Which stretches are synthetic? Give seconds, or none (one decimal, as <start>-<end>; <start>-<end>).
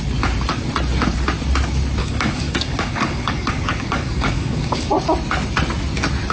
2.0-4.9